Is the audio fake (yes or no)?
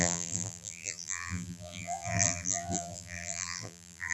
yes